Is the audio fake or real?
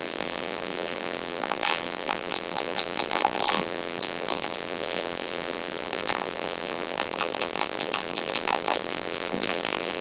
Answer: fake